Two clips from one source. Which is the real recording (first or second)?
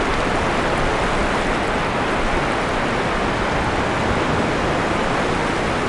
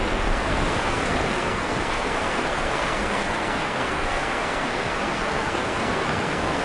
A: first